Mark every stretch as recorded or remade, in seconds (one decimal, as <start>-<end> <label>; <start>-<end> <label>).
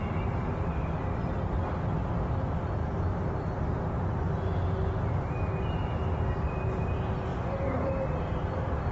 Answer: 0.0-2.8 recorded; 2.8-3.9 remade; 3.9-7.3 recorded; 7.3-8.5 remade; 8.5-8.9 recorded